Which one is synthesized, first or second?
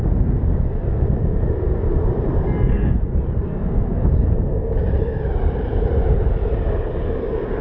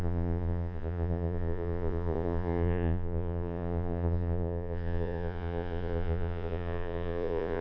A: second